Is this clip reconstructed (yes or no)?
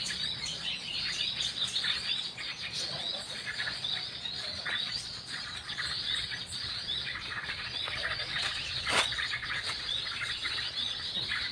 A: yes